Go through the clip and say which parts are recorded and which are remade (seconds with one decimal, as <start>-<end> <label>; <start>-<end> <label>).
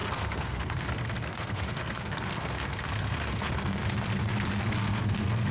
0.0-3.8 remade; 3.8-4.6 recorded; 4.6-5.5 remade